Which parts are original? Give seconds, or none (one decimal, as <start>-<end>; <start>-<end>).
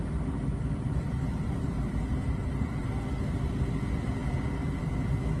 0.0-0.9; 2.9-5.4